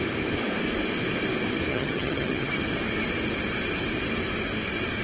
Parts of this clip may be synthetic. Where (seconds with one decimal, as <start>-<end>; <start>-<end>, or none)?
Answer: 1.7-2.6